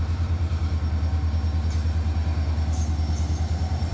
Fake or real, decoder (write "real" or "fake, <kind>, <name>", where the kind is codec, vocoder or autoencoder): real